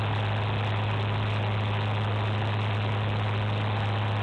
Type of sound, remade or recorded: recorded